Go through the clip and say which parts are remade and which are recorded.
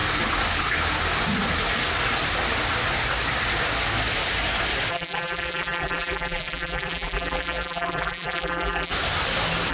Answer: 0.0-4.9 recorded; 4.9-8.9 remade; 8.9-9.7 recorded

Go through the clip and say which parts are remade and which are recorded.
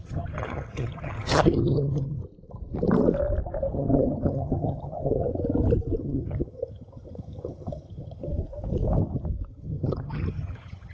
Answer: 0.0-2.2 remade; 2.2-3.7 recorded; 3.7-5.3 remade; 5.3-6.0 recorded; 6.0-8.3 remade; 8.3-9.5 recorded; 9.5-10.9 remade